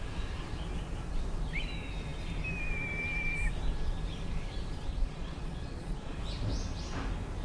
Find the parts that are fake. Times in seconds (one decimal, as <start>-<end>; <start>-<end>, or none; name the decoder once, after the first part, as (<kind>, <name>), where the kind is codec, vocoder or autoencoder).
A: 4.9-6.2 (vocoder, Vocos)